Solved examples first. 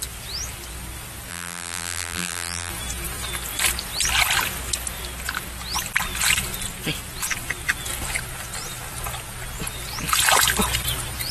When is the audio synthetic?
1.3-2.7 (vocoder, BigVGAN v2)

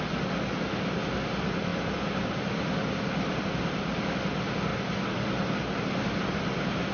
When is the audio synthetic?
1.7-3.4 (vocoder, BigVGAN v2)

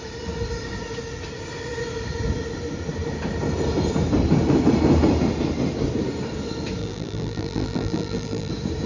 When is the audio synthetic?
6.8-8.5 (vocoder, BigVGAN v2)

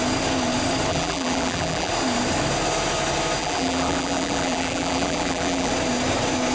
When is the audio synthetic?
0.9-1.9 (vocoder, BigVGAN v2); 3.4-5.7

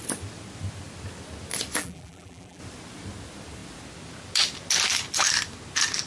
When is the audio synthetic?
1.8-2.6 (vocoder, BigVGAN v2)